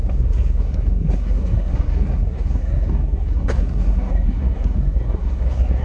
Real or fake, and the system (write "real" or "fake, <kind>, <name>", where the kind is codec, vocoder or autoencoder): fake, codec, SNAC